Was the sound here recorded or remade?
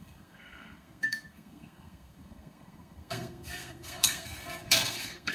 remade